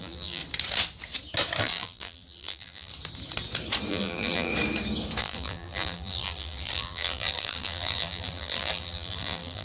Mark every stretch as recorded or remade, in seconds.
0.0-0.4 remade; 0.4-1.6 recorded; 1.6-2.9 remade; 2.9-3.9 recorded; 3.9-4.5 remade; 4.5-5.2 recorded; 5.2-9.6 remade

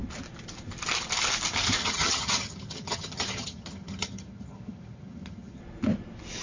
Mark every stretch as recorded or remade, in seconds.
0.0-1.8 recorded; 1.8-5.6 remade; 5.6-6.4 recorded

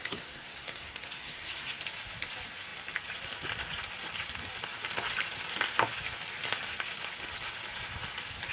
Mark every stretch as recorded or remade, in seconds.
0.0-1.8 remade; 1.8-8.5 recorded

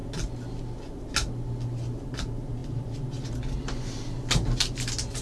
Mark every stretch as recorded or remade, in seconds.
0.0-5.2 recorded

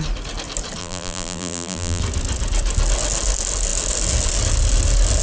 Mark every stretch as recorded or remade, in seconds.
0.0-0.8 recorded; 0.8-2.0 remade; 2.0-5.2 recorded

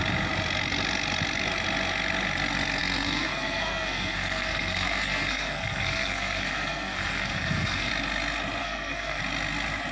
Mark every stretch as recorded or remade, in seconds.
0.0-2.8 recorded; 2.8-7.9 remade; 7.9-8.6 recorded; 8.6-9.2 remade; 9.2-9.9 recorded

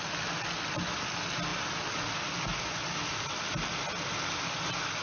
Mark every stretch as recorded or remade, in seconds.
0.0-5.0 recorded